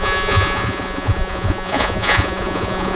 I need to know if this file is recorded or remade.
remade